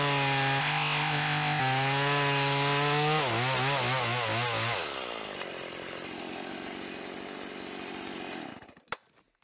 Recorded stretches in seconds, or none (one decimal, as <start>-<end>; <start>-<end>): 0.0-0.6; 1.6-9.4